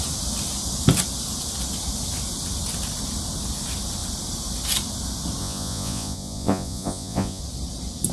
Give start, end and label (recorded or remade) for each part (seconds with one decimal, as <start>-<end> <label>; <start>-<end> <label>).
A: 0.0-5.4 recorded; 5.4-7.4 remade; 7.4-8.1 recorded